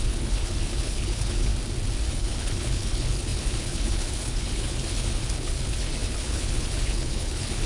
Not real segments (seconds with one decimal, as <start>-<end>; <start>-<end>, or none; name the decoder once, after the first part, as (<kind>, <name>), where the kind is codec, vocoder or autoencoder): 0.0-1.5 (codec, HILCodec); 2.1-7.7